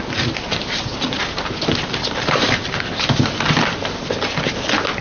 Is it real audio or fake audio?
real